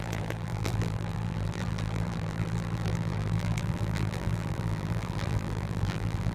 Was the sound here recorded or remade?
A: remade